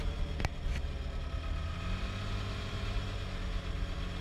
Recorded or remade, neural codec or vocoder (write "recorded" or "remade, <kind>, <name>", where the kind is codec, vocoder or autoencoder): recorded